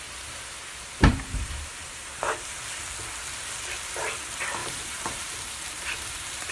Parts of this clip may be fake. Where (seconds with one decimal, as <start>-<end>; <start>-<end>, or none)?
1.1-2.5; 4.6-6.5